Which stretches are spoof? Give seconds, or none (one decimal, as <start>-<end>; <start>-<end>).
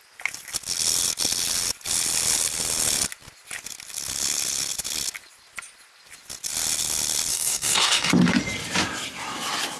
7.3-8.1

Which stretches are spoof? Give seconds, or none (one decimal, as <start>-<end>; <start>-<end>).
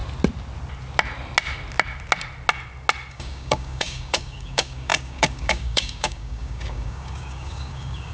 3.1-8.1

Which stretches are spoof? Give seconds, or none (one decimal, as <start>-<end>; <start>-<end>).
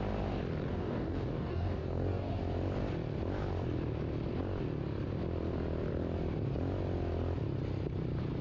0.7-2.4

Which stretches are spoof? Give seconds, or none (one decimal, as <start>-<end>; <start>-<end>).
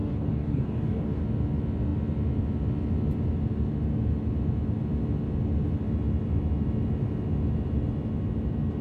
0.0-1.2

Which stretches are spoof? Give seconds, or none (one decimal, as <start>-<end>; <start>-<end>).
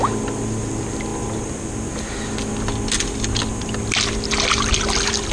none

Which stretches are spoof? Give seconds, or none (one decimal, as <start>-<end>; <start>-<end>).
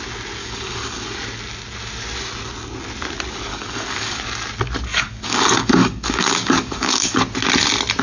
0.4-1.0; 3.5-4.2; 4.9-7.2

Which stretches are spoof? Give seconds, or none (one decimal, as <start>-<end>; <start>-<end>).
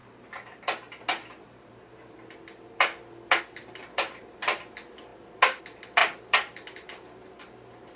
none